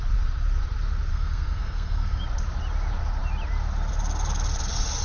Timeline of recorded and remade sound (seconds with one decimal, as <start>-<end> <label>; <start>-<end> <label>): 0.0-1.1 recorded; 1.1-2.2 remade; 2.2-5.0 recorded